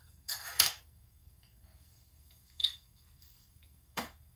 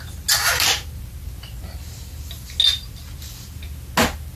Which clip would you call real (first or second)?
second